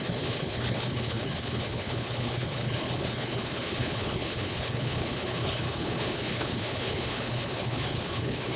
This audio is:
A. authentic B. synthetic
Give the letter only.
B